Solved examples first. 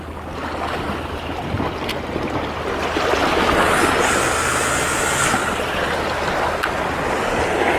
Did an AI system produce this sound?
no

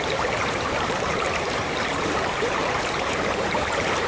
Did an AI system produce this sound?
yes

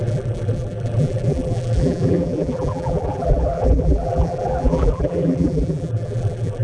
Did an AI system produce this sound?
yes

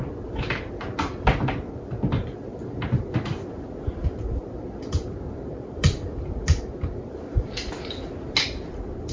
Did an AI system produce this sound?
yes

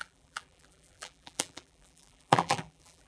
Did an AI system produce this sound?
yes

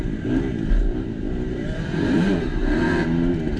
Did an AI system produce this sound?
yes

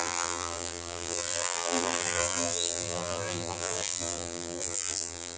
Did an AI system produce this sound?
yes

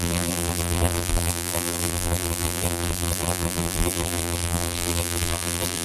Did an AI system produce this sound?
yes